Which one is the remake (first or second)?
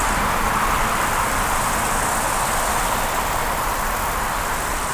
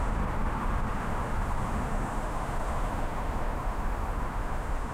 second